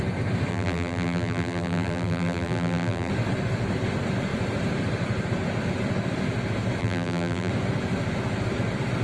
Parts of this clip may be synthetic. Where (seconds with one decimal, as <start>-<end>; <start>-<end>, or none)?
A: 0.5-3.1; 6.8-7.5